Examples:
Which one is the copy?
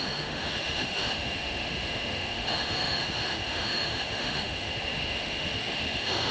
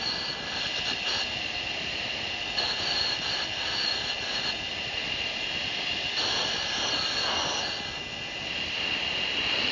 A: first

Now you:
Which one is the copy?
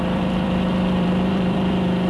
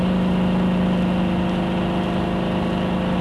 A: first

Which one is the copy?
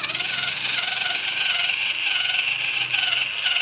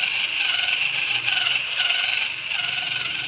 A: second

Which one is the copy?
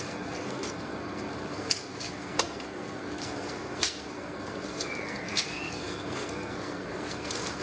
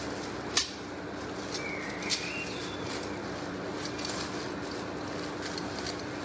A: first